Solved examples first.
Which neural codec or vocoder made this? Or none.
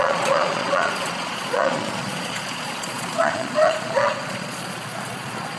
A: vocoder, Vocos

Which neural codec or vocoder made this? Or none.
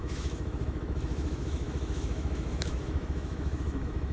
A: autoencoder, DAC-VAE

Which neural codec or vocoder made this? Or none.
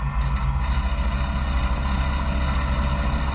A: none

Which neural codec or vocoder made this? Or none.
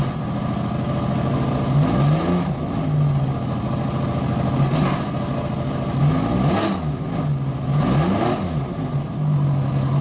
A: none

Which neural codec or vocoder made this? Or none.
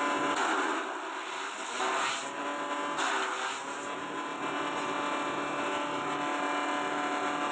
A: none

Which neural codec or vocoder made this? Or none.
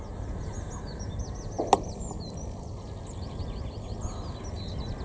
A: none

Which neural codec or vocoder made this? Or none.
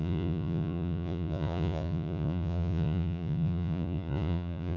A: vocoder, Vocos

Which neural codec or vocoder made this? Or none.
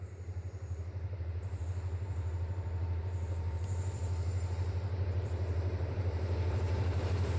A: vocoder, BigVGAN v2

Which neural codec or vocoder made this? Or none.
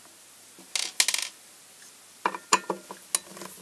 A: none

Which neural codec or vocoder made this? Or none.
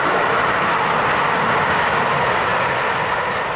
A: none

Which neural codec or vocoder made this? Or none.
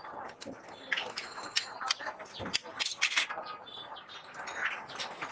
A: none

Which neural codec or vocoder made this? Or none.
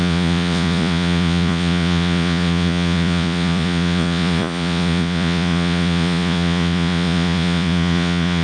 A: vocoder, Vocos